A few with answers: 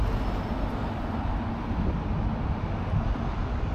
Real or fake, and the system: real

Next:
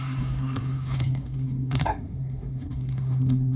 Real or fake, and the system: fake, codec, SNAC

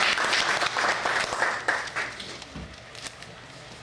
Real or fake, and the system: real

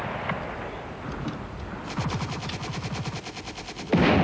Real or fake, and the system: real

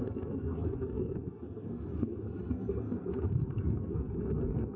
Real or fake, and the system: fake, codec, SNAC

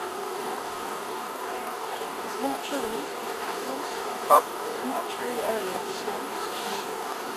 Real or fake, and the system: fake, codec, DAC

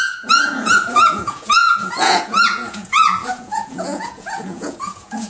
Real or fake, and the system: fake, vocoder, Vocos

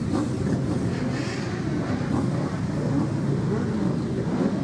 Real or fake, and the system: real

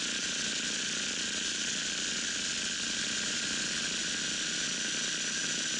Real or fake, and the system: real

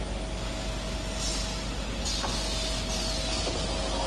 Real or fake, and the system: real